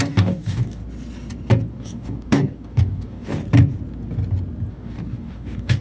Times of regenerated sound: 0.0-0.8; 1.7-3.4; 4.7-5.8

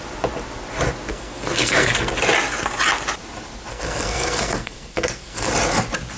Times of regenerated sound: 1.1-2.1; 3.7-5.5

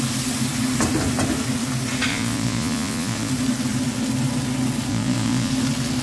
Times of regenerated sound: 2.1-3.3; 4.9-5.5

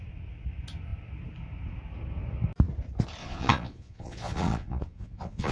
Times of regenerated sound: 3.2-5.5

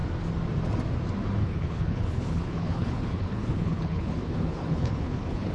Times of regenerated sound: 1.4-5.5

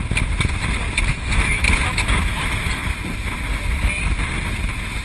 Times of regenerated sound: 1.1-2.4

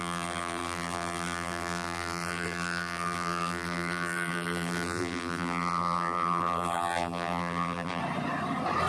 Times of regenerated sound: 0.0-8.0